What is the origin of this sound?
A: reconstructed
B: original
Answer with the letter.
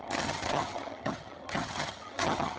A